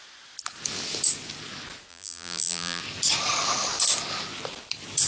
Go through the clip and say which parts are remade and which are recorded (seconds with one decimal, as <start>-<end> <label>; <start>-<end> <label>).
0.0-1.9 recorded; 1.9-2.8 remade; 2.8-5.1 recorded